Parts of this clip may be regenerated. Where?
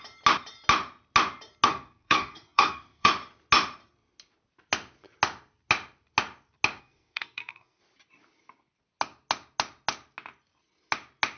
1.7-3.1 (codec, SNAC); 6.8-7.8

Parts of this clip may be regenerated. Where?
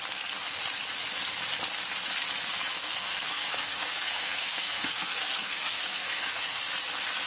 2.8-6.6 (codec, SNAC)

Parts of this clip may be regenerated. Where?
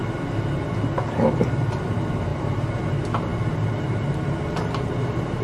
none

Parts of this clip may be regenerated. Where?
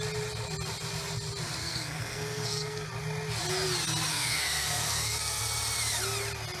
1.6-2.9 (codec, SNAC); 4.1-5.4